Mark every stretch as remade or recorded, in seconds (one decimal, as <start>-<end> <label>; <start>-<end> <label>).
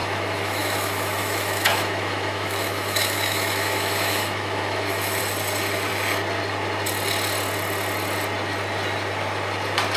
0.0-5.2 remade; 5.2-10.0 recorded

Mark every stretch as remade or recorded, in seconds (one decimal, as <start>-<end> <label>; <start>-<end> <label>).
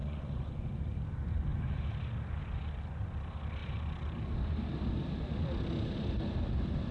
0.0-0.5 remade; 0.5-6.9 recorded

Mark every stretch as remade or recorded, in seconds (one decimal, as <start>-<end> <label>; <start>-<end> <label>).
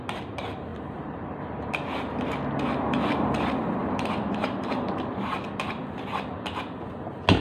0.0-0.7 recorded; 0.7-1.9 remade; 1.9-3.8 recorded; 3.8-6.3 remade; 6.3-7.4 recorded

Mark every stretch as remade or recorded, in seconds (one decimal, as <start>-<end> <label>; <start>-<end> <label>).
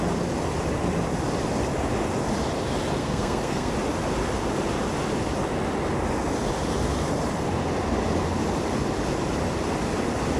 0.0-3.0 recorded; 3.0-3.7 remade; 3.7-10.4 recorded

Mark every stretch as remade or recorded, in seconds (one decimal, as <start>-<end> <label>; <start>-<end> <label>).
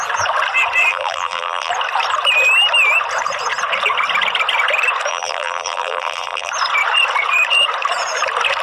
0.0-0.9 recorded; 0.9-1.7 remade; 1.7-5.1 recorded; 5.1-6.5 remade; 6.5-8.6 recorded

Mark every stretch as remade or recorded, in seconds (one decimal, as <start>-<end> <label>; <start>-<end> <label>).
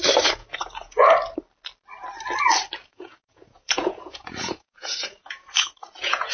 0.0-0.4 recorded; 0.4-1.1 remade; 1.1-2.8 recorded; 2.8-6.3 remade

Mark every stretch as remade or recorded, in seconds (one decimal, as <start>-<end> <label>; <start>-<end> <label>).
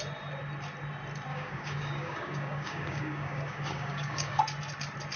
0.0-1.3 recorded; 1.3-4.4 remade; 4.4-5.2 recorded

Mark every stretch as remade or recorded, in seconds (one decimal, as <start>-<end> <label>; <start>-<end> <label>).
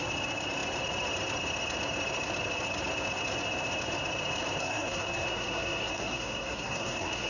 0.0-4.6 recorded; 4.6-7.3 remade